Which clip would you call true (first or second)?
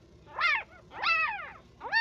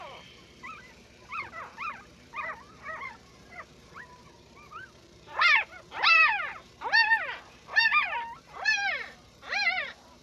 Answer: first